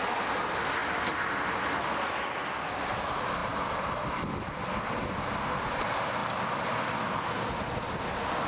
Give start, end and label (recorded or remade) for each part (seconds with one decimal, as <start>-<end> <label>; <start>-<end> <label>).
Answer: 0.0-8.5 recorded